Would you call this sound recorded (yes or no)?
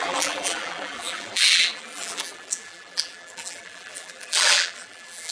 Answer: no